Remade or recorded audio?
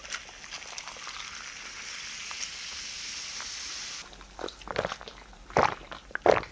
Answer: recorded